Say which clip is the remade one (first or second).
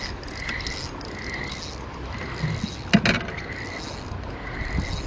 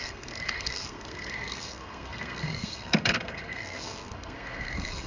second